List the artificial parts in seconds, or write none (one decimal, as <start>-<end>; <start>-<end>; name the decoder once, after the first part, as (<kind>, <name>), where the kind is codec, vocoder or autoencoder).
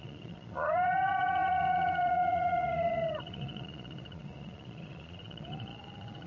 0.0-6.3 (vocoder, Vocos)